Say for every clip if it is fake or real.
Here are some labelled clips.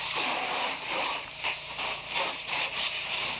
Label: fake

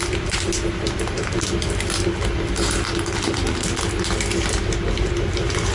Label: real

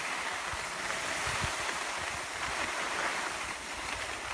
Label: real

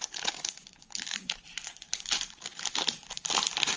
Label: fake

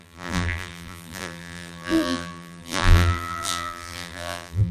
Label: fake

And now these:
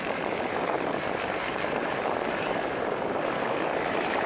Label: fake